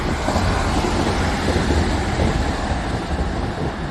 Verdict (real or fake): real